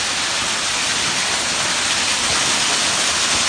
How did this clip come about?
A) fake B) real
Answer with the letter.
B